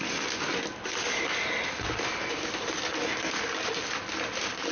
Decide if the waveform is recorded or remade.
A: recorded